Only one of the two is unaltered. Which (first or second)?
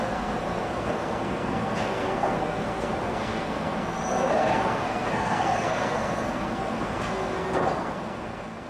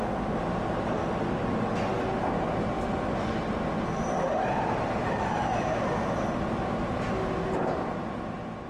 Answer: second